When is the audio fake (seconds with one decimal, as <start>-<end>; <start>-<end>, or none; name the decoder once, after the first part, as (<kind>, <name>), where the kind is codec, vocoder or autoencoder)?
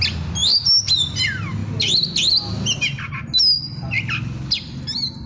none